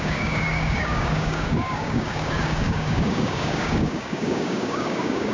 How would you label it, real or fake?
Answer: fake